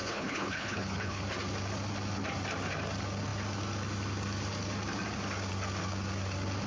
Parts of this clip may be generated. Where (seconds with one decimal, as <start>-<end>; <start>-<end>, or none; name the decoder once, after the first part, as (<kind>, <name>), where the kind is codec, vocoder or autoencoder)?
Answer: 0.0-1.2 (codec, HILCodec)